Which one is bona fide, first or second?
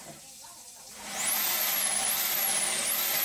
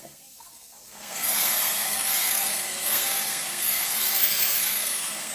first